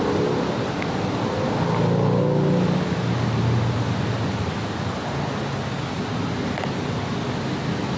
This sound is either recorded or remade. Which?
recorded